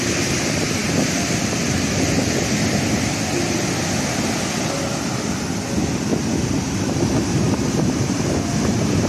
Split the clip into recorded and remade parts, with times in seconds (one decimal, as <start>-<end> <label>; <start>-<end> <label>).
0.0-6.1 recorded; 6.1-9.1 remade